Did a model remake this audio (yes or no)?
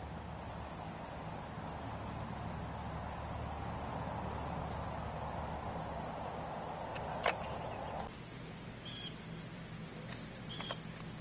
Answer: no